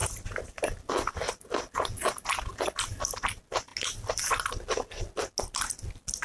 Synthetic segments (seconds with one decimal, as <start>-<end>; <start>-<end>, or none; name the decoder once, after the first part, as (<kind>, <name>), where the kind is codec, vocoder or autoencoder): none